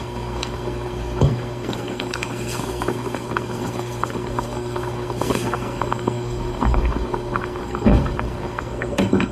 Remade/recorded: remade